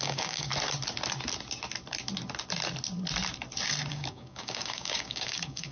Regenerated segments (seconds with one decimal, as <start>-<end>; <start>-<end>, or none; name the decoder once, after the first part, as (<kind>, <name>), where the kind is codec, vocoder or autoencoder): 0.0-0.5 (codec, DAC); 3.9-5.7